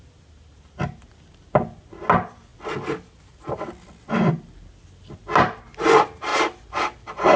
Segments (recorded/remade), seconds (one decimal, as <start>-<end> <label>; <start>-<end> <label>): 0.0-7.4 recorded